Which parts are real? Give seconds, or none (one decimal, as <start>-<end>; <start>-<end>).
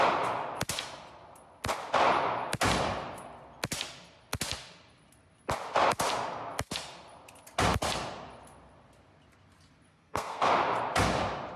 0.0-9.9; 10.5-11.6